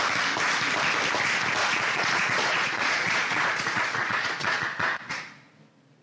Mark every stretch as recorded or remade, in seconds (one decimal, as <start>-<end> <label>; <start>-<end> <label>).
0.0-1.6 recorded; 1.6-5.1 remade; 5.1-6.0 recorded

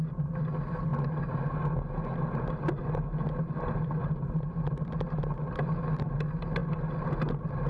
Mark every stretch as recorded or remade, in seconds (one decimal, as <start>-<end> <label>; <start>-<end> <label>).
0.0-7.7 recorded

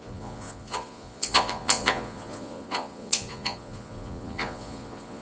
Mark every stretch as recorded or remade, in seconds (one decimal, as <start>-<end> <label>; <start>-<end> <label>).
0.0-5.2 remade

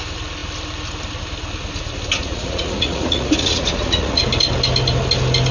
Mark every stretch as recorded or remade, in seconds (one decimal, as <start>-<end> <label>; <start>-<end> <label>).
0.0-2.2 recorded; 2.2-4.2 remade; 4.2-5.5 recorded